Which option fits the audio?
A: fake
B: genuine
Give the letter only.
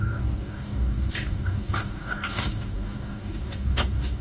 A